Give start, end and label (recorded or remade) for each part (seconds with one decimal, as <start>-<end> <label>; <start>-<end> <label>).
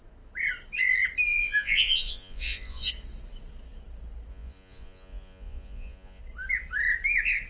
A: 0.0-1.3 recorded; 1.3-2.9 remade; 2.9-4.3 recorded; 4.3-6.2 remade; 6.2-7.5 recorded